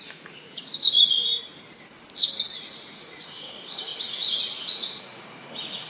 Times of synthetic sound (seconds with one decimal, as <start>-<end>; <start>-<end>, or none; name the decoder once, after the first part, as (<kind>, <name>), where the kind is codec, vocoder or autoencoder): 0.0-1.5 (vocoder, Vocos); 2.7-5.9